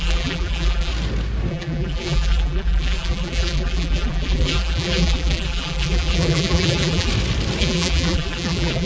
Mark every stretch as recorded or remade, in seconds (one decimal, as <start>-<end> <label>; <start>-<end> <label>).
0.0-0.9 remade; 0.9-1.5 recorded; 1.5-7.1 remade; 7.1-7.6 recorded; 7.6-8.9 remade